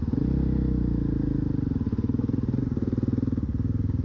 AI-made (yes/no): no